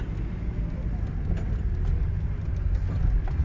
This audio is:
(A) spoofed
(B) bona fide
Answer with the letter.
B